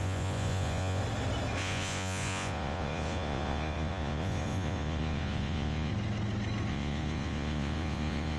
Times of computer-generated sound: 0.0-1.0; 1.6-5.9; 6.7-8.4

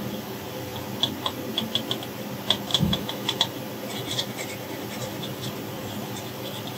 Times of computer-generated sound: 2.7-3.4

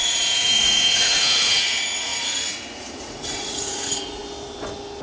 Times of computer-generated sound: 0.0-4.2

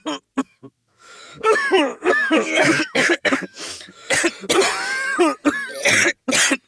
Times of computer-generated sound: 0.4-4.2

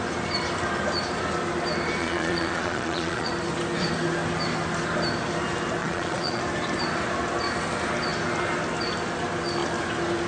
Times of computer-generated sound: 2.0-3.3; 5.8-6.4

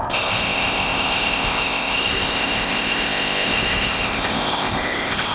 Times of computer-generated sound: 0.0-5.3

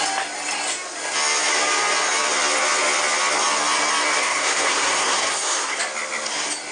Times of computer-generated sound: 4.2-5.8